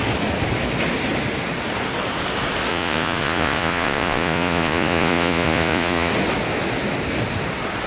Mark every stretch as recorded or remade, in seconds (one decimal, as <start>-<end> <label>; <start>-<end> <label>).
0.0-2.7 recorded; 2.7-6.1 remade; 6.1-7.9 recorded